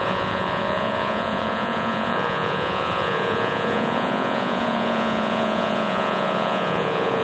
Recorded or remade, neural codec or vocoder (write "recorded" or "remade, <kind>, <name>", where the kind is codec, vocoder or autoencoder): remade, vocoder, Vocos